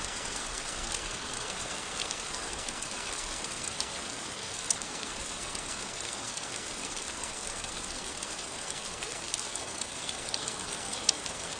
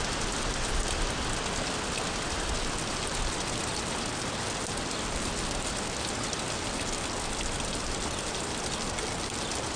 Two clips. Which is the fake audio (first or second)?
first